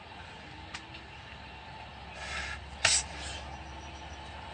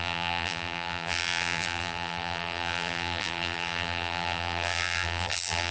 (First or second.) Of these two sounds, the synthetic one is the second